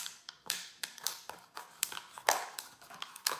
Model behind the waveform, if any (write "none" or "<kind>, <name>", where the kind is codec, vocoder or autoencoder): codec, DAC